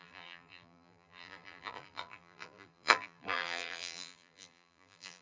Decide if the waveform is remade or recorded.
remade